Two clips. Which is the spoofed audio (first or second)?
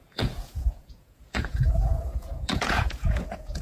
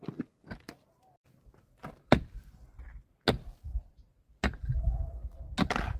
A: first